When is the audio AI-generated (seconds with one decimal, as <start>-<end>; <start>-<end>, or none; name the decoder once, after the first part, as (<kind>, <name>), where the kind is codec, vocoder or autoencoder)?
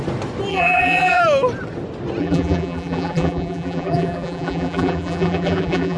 0.5-1.2 (vocoder, BigVGAN v2); 2.2-6.0